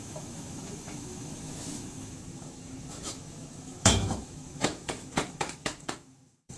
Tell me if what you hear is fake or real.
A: fake